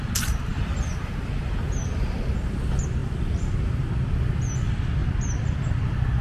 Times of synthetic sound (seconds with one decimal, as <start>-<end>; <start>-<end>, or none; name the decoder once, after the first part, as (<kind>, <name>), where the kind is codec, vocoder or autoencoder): 0.5-2.0 (vocoder, BigVGAN v2); 3.0-3.9; 5.0-5.7